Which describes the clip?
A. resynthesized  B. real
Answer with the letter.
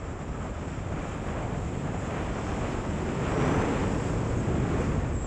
B